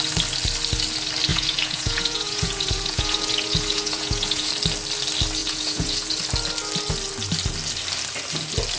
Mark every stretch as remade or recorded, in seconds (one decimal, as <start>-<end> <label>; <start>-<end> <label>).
0.0-1.3 recorded; 1.3-4.5 remade; 4.5-5.4 recorded; 5.4-6.2 remade; 6.2-8.8 recorded